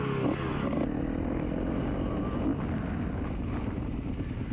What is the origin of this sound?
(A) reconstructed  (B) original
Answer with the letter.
B